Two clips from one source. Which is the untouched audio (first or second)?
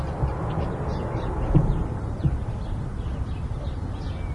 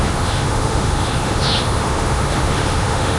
first